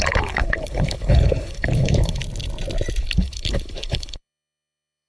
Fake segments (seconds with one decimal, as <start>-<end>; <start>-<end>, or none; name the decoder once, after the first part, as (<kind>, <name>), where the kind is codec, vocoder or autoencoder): 0.0-2.2 (codec, HILCodec); 3.0-5.1